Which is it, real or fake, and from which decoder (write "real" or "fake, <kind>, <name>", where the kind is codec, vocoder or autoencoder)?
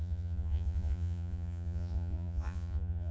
fake, vocoder, Vocos